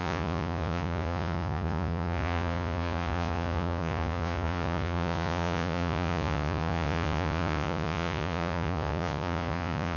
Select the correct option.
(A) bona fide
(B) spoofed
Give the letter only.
B